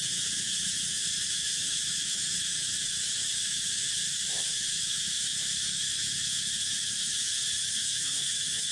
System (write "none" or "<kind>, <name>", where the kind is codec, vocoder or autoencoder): autoencoder, DAC-VAE